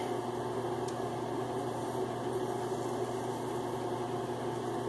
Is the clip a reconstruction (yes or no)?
no